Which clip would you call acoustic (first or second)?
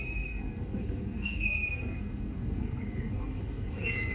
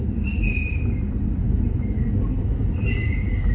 second